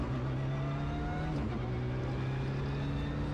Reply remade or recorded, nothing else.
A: recorded